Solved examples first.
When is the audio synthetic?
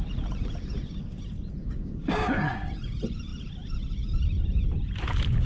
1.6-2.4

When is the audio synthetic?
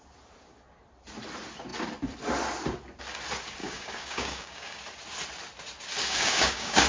3.6-4.8; 6.0-6.9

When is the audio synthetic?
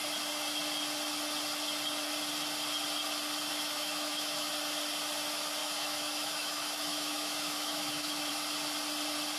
3.5-4.5; 5.6-8.3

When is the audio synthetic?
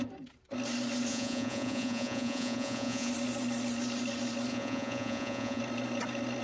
1.1-3.1; 4.5-5.6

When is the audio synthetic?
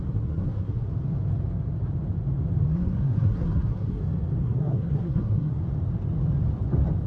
0.0-0.9; 2.7-4.0; 4.4-5.6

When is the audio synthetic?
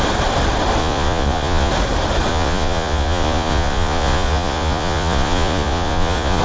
0.8-1.7; 2.3-6.4